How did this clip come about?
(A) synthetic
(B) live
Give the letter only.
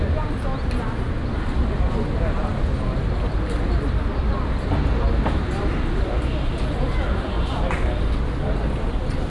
B